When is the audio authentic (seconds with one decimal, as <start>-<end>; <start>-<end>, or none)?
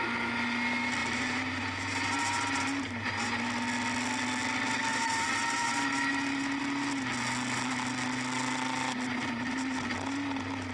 0.0-1.0; 3.4-4.9; 6.6-10.7